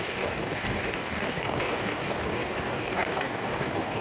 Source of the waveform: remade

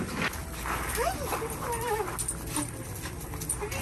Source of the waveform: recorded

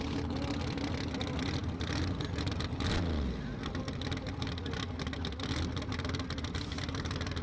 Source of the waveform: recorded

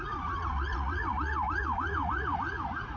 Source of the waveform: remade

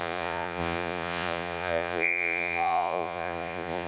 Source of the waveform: remade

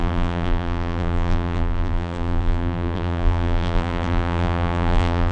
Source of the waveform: remade